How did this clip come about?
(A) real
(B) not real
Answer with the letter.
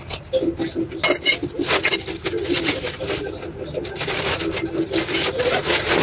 A